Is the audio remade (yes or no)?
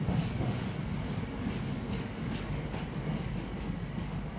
yes